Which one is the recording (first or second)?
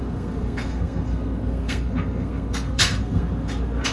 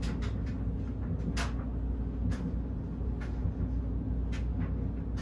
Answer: second